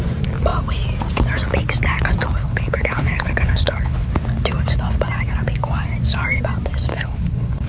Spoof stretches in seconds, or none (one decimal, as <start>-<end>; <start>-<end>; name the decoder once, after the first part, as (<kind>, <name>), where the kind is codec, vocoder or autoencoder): 2.4-4.1 (codec, HILCodec); 6.9-7.7